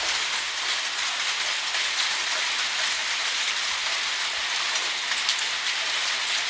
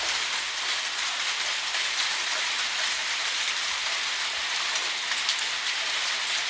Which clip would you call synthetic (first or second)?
second